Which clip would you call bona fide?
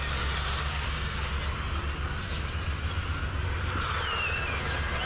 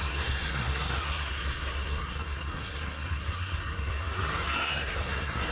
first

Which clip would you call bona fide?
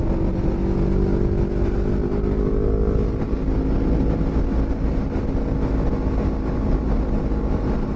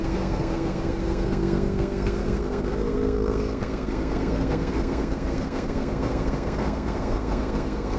first